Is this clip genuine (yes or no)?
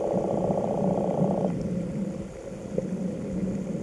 yes